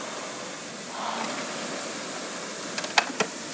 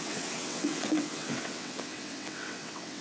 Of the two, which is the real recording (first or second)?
first